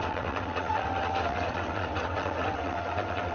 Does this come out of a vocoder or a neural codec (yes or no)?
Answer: yes